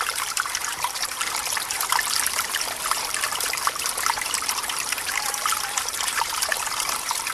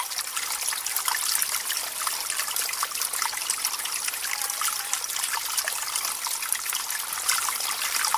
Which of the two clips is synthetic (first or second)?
first